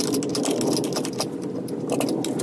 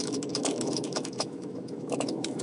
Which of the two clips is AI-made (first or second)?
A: second